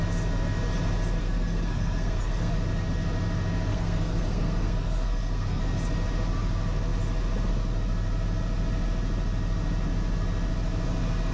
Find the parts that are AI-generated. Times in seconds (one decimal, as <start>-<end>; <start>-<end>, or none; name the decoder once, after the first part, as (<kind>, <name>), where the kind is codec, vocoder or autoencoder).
1.2-2.5 (codec, SNAC); 3.7-5.6